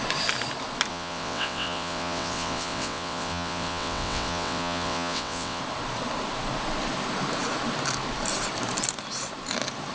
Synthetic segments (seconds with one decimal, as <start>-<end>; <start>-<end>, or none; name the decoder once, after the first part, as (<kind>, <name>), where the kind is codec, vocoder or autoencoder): 0.9-5.6 (vocoder, WaveNeXt)